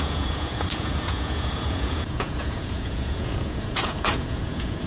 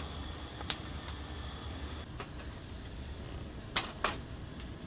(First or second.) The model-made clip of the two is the first